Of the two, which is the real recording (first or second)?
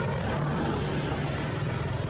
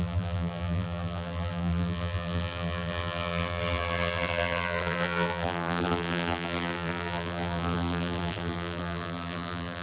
first